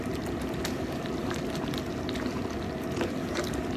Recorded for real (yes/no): no